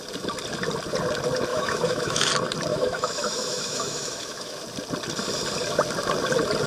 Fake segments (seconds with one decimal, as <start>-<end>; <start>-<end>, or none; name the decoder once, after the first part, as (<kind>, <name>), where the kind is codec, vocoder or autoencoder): 1.5-2.3 (autoencoder, DAC-VAE); 2.7-4.6